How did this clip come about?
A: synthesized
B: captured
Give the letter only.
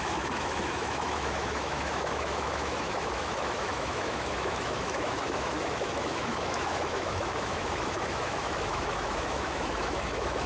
A